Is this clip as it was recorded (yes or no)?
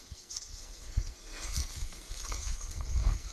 no